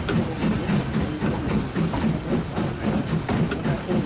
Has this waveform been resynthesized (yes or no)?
no